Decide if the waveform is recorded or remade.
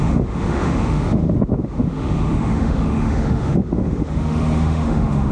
remade